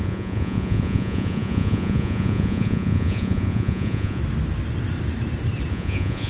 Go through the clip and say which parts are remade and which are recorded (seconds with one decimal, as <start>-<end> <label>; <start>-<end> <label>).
0.0-4.2 remade; 4.2-5.7 recorded; 5.7-6.3 remade